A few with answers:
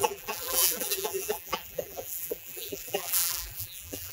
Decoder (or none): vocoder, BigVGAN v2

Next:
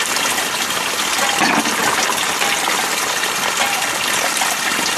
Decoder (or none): none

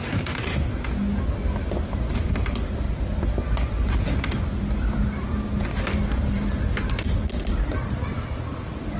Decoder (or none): none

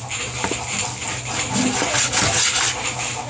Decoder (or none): none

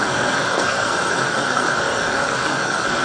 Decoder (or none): codec, SNAC